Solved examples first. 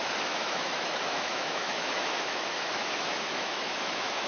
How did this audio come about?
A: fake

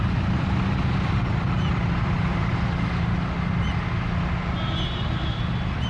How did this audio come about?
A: real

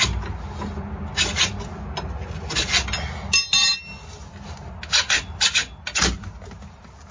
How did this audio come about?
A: real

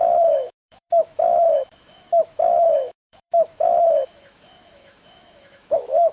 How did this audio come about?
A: fake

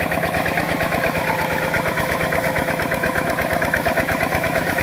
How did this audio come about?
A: fake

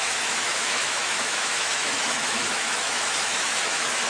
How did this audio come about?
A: fake